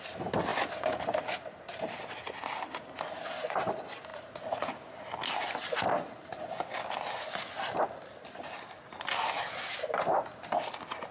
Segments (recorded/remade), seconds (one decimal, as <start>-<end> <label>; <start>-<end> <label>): 0.0-4.1 recorded; 4.1-4.7 remade; 4.7-11.1 recorded